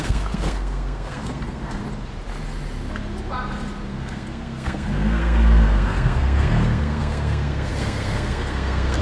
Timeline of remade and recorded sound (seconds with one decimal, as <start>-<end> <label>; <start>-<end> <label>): 0.0-1.8 remade; 1.8-3.9 recorded; 3.9-9.0 remade